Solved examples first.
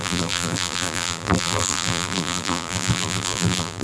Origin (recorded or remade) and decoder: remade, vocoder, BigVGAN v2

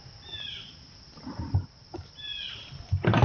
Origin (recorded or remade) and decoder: recorded